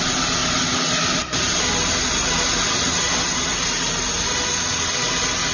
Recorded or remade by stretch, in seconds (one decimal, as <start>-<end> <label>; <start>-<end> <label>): 0.0-5.5 recorded